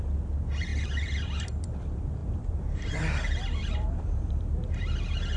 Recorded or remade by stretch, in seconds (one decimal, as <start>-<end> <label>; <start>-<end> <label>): 0.0-2.2 recorded; 2.2-4.4 remade; 4.4-5.4 recorded